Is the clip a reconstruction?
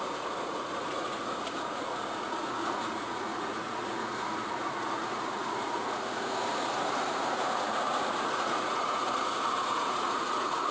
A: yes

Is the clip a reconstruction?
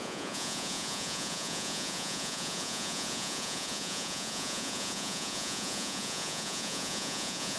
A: yes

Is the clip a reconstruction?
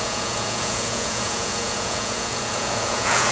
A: yes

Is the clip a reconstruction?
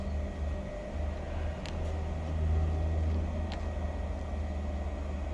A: no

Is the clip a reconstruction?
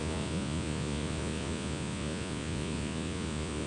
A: yes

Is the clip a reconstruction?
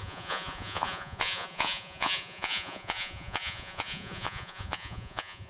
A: yes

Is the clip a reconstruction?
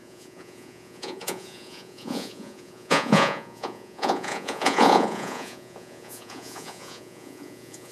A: yes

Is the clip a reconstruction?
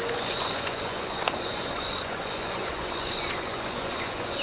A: yes